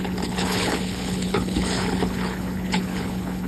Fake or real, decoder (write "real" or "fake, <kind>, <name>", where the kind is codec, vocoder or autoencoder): fake, codec, HILCodec